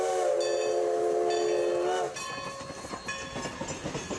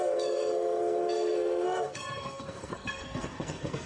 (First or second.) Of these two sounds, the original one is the first